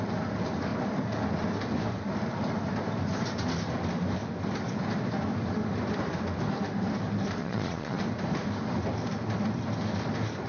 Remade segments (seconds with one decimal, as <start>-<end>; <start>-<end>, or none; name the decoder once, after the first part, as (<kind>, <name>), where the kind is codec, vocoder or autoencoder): 7.4-8.0 (vocoder, Vocos)